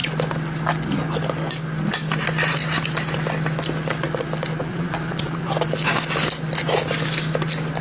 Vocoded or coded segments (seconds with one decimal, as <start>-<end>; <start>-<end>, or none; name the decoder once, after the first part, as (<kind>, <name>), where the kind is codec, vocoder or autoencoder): 4.5-5.5 (vocoder, Vocos)